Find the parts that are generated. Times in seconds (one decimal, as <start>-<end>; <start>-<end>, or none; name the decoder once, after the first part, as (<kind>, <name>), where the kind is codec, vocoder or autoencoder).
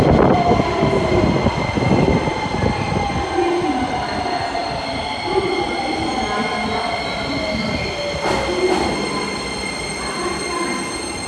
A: none